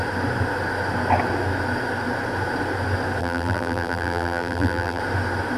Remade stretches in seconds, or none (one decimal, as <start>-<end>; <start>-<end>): 3.2-5.0